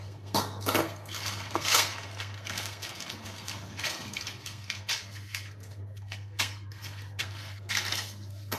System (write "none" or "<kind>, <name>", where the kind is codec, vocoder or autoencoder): codec, SNAC